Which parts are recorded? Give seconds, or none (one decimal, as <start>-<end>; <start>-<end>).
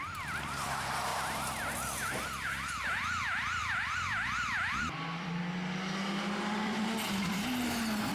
0.0-1.1; 1.7-3.6; 5.3-8.1